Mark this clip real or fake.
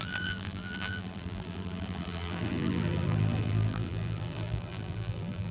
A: fake